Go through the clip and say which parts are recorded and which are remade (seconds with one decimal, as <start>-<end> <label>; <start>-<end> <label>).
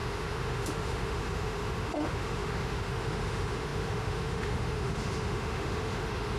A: 0.0-6.4 remade